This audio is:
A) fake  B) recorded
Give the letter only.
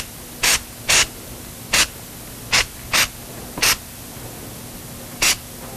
B